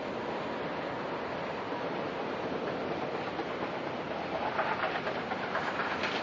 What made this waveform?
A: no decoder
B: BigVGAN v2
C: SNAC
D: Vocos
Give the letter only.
B